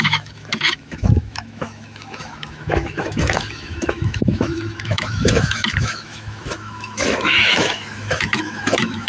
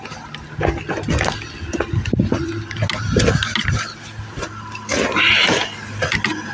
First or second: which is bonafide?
second